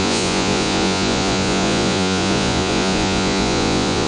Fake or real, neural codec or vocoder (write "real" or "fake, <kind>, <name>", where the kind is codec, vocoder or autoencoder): fake, vocoder, Vocos